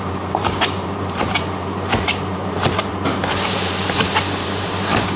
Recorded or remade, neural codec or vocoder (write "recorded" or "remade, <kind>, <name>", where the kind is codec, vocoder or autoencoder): remade, vocoder, BigVGAN v2